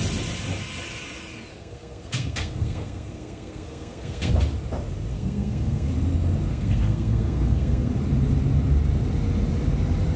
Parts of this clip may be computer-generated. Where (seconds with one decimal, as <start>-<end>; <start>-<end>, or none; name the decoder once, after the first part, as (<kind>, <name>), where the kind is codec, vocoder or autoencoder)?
1.5-4.3 (codec, SNAC); 5.1-5.9; 6.5-7.9